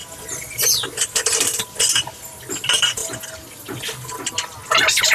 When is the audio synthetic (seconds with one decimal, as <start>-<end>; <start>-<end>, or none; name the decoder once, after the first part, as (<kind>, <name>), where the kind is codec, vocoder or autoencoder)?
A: none